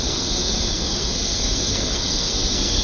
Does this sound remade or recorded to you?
remade